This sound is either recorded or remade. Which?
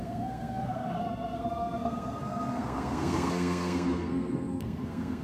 remade